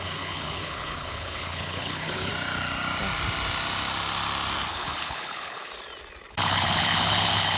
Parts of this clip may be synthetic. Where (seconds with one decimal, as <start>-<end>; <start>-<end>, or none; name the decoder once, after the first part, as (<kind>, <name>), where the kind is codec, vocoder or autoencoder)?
0.0-2.3 (codec, HILCodec); 4.7-5.7; 6.3-7.6